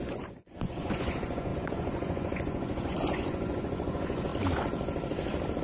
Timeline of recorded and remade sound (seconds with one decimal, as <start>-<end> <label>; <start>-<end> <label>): 0.0-4.3 remade; 4.3-5.6 recorded